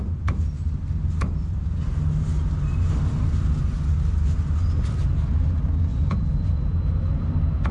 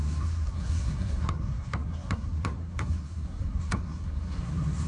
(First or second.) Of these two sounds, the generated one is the second